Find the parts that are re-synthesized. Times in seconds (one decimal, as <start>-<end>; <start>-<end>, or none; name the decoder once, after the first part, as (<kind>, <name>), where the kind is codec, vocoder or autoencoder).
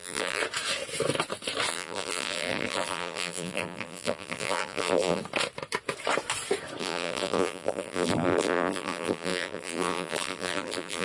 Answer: 0.0-0.4 (vocoder, BigVGAN v2); 1.7-5.2; 6.8-11.0